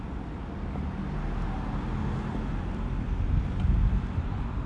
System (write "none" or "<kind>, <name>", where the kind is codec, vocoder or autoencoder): none